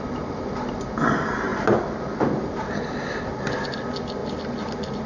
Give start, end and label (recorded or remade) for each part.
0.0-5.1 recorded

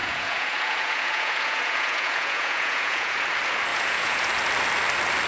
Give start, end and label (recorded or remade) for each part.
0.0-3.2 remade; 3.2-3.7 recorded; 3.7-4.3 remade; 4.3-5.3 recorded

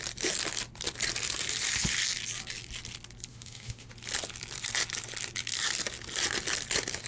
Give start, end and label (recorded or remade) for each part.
0.0-3.3 recorded; 3.3-3.9 remade; 3.9-7.1 recorded

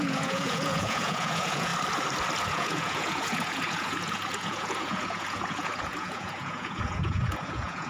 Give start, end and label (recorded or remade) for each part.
0.0-1.7 remade; 1.7-2.4 recorded; 2.4-7.9 remade

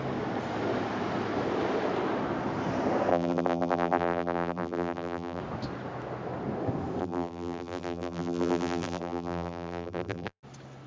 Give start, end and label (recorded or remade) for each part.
0.0-3.1 recorded; 3.1-5.4 remade; 5.4-7.0 recorded; 7.0-10.4 remade; 10.4-10.9 recorded

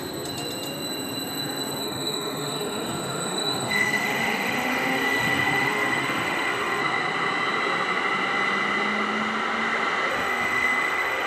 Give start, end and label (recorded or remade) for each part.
0.0-1.8 recorded; 1.8-6.8 remade; 6.8-10.1 recorded; 10.1-11.3 remade

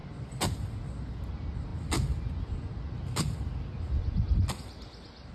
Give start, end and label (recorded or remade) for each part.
0.0-5.3 recorded

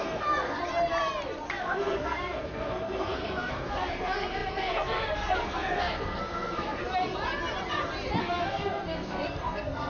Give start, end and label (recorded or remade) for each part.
0.0-0.6 remade; 0.6-1.6 recorded; 1.6-6.8 remade; 6.8-8.2 recorded; 8.2-9.9 remade